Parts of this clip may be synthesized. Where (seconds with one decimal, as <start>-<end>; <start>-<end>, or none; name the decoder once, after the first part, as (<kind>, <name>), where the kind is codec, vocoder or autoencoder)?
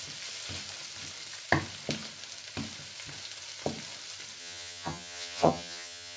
4.4-6.2 (vocoder, HiFi-GAN)